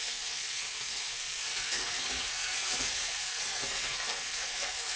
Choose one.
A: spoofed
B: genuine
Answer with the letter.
A